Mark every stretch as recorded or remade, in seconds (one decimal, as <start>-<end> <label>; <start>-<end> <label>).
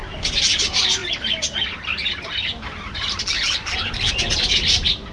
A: 0.0-5.1 recorded